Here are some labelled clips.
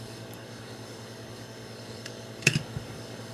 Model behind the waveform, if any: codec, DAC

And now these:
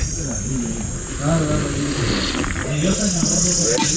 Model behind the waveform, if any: none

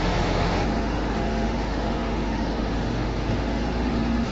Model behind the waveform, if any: autoencoder, DAC-VAE